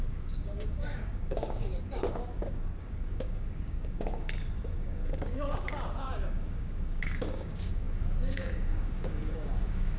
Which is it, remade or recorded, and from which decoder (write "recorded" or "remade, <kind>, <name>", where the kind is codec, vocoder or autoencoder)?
remade, codec, DAC